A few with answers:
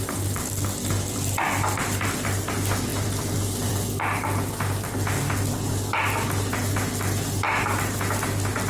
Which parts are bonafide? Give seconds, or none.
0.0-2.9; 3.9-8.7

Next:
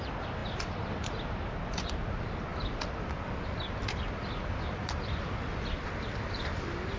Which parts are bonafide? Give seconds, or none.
0.0-7.0

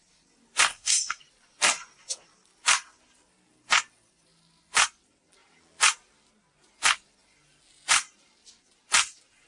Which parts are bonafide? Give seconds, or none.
0.0-0.7; 1.2-9.5

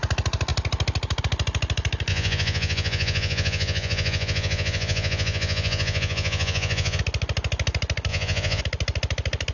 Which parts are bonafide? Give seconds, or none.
0.0-2.1; 7.0-8.1; 8.6-9.5

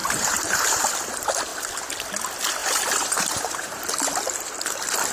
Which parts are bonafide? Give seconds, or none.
0.8-2.6; 3.8-5.1

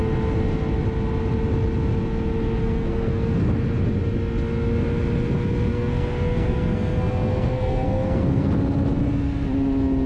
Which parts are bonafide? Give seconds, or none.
0.0-2.6; 3.4-5.7; 8.5-10.1

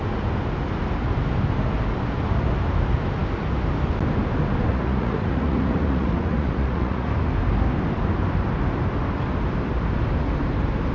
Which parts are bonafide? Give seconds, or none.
0.0-4.7; 7.1-10.9

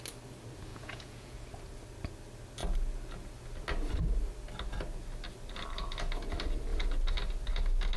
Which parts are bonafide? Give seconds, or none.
0.0-0.7; 1.4-8.0